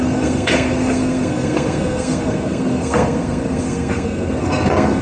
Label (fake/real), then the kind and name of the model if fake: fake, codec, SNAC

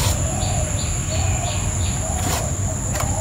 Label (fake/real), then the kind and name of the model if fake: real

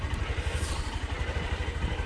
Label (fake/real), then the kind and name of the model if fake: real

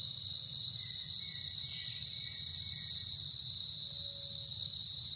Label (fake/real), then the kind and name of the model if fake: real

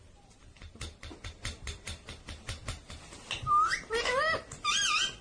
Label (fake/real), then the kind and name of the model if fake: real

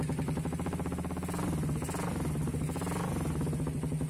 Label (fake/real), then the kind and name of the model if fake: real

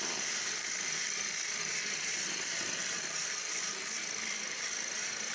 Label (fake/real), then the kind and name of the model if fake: real